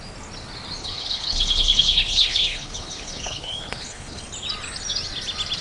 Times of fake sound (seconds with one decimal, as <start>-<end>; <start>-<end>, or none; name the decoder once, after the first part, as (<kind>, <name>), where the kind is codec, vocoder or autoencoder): 0.8-4.2 (codec, HILCodec)